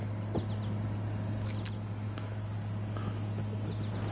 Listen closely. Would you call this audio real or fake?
real